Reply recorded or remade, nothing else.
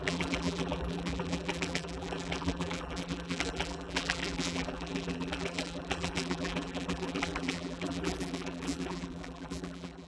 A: remade